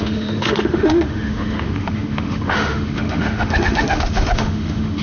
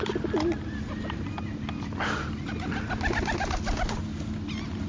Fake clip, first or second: first